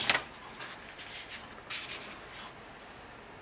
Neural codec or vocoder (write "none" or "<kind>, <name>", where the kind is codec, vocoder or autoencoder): none